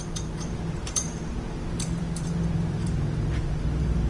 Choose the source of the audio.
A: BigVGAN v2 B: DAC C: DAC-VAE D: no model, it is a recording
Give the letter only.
A